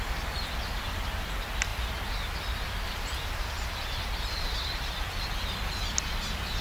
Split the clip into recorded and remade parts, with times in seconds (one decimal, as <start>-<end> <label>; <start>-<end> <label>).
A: 0.0-1.7 recorded; 1.7-4.4 remade; 4.4-6.6 recorded

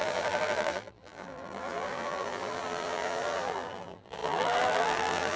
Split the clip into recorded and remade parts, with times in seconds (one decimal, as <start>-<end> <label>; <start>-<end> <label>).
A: 0.0-5.4 remade

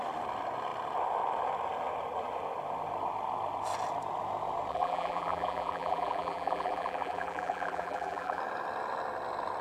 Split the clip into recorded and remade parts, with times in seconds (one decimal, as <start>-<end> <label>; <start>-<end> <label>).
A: 0.0-4.7 recorded; 4.7-8.4 remade; 8.4-9.6 recorded

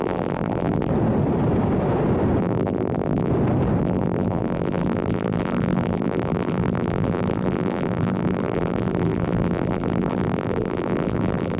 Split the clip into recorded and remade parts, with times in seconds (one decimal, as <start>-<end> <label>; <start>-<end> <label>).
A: 0.0-0.9 remade; 0.9-2.4 recorded; 2.4-3.3 remade; 3.3-3.8 recorded; 3.8-11.6 remade

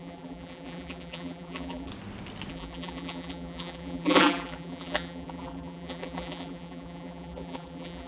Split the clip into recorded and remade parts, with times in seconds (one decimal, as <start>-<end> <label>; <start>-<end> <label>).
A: 0.0-1.9 remade; 1.9-2.5 recorded; 2.5-8.1 remade

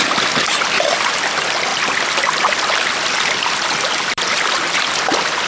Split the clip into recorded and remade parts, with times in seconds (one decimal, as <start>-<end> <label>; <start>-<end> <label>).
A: 0.0-1.7 recorded; 1.7-5.0 remade; 5.0-5.5 recorded

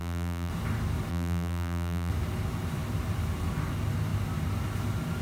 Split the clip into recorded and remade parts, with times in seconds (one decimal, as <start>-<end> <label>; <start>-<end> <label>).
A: 0.0-0.5 remade; 0.5-1.1 recorded; 1.1-2.1 remade; 2.1-5.2 recorded